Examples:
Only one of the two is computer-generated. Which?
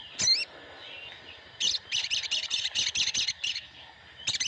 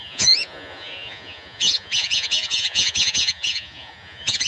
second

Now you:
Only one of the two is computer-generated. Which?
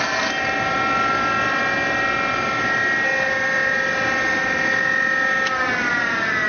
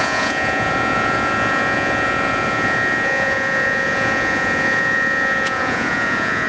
second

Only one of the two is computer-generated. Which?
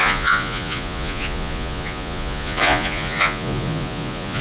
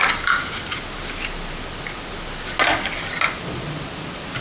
first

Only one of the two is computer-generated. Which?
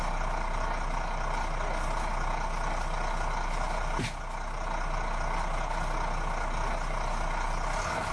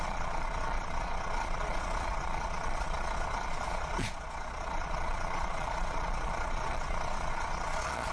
second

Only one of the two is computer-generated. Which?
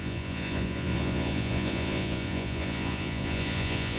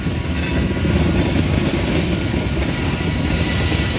first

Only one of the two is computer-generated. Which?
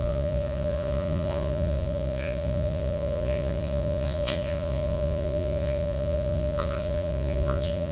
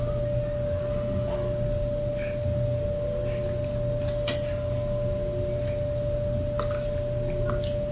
first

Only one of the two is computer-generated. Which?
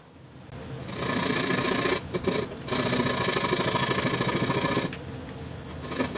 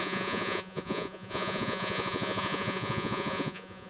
second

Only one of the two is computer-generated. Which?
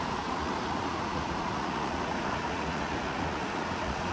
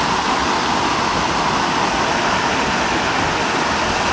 first